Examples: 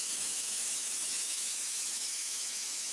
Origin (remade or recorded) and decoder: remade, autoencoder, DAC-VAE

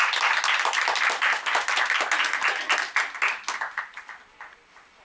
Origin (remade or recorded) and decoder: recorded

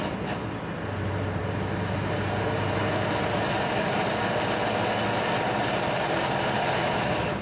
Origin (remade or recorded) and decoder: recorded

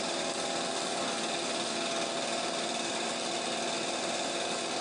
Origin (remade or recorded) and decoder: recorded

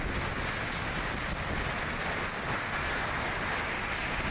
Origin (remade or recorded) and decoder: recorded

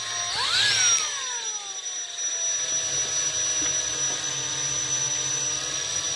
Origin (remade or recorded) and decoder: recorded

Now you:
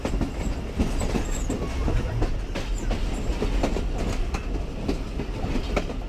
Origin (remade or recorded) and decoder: recorded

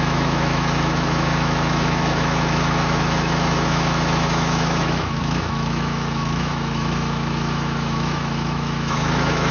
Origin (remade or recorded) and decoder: remade, autoencoder, DAC-VAE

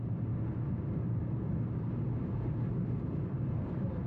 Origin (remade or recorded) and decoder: recorded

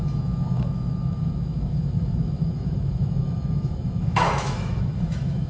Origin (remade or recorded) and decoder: remade, autoencoder, DAC-VAE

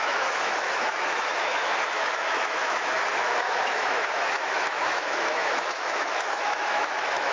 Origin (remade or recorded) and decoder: remade, autoencoder, DAC-VAE